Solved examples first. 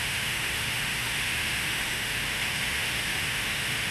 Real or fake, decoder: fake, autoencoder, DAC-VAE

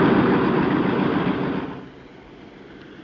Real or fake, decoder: real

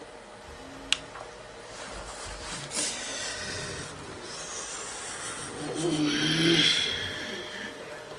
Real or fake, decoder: real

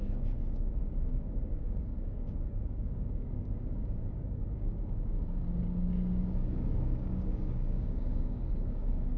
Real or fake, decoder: fake, codec, DAC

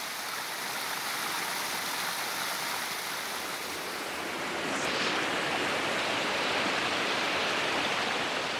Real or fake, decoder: real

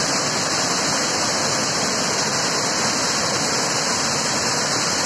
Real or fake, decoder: real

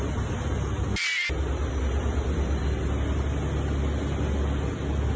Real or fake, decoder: real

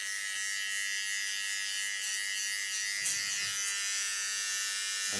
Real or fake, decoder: real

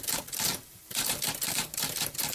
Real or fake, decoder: fake, vocoder, BigVGAN v2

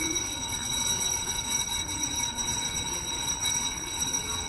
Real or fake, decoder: fake, vocoder, WaveNeXt